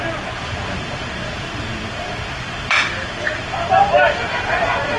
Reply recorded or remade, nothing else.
remade